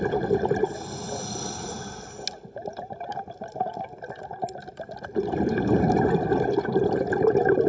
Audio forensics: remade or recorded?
recorded